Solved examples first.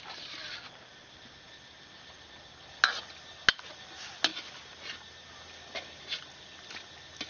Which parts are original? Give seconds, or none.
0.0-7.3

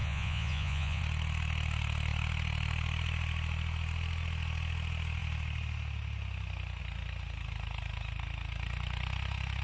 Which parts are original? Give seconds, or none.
1.0-9.6

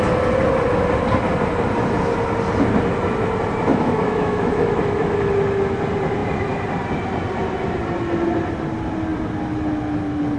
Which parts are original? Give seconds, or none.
0.0-3.7; 5.3-10.4